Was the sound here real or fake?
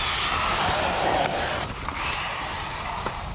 real